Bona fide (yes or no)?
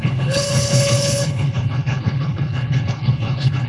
no